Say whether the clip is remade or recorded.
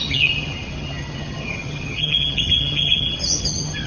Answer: remade